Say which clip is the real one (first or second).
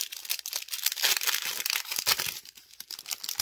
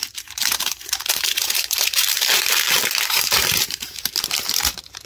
first